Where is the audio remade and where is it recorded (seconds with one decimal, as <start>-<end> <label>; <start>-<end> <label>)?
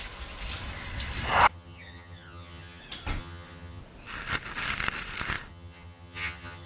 0.0-1.5 recorded; 1.5-2.8 remade; 2.8-3.2 recorded; 3.2-3.8 remade; 3.8-5.5 recorded; 5.5-6.7 remade